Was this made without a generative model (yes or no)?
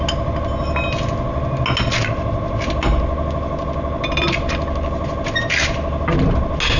yes